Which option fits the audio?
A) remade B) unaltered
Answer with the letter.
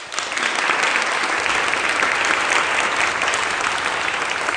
B